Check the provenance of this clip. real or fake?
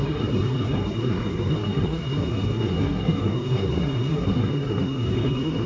fake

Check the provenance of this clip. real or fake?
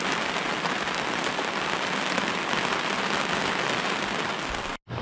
real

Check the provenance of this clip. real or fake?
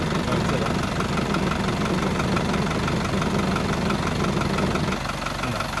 real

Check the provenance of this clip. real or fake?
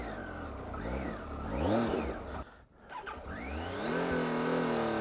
real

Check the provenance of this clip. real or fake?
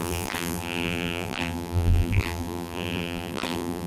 fake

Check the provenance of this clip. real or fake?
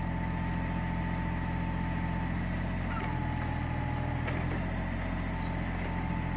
real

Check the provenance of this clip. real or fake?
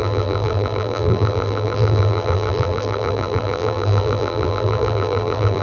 fake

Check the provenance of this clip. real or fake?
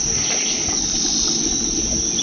real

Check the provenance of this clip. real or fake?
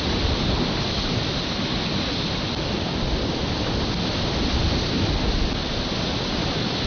real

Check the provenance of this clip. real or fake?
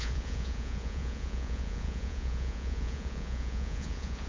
fake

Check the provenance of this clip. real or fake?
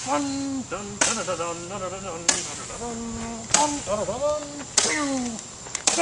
real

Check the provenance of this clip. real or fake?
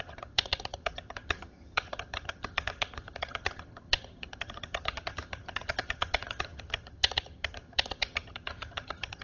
fake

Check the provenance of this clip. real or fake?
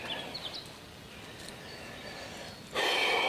real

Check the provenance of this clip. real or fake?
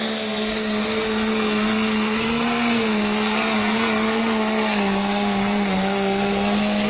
fake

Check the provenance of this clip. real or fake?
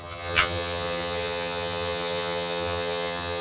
fake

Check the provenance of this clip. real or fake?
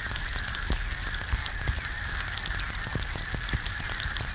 real